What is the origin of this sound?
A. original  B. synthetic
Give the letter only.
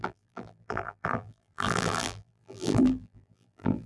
B